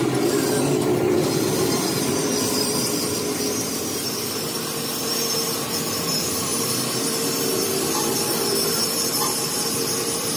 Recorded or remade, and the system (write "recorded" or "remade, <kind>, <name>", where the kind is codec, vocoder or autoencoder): remade, vocoder, BigVGAN v2